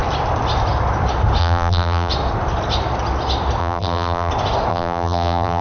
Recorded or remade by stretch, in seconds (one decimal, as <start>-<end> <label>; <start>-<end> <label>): 0.0-1.4 recorded; 1.4-2.1 remade; 2.1-3.6 recorded; 3.6-4.3 remade; 4.3-4.7 recorded; 4.7-5.6 remade